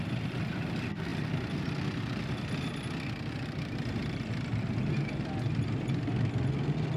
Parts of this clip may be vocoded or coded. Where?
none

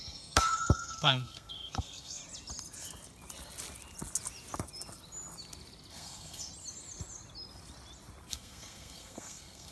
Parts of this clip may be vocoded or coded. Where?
0.0-2.2; 5.9-6.5; 8.3-9.7

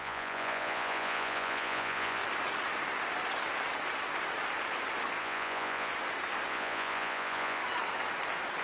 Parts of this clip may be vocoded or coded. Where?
0.0-2.2; 5.2-5.9; 6.5-7.6

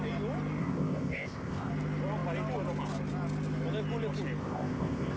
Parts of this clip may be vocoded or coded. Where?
0.6-1.7; 4.4-5.2

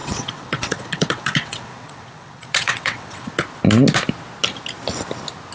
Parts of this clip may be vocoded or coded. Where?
0.0-3.3

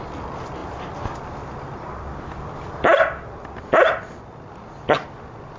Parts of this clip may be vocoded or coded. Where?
none

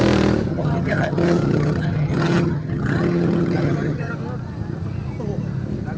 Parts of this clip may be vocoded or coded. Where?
0.5-4.1

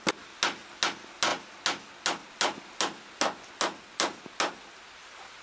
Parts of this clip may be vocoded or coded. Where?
none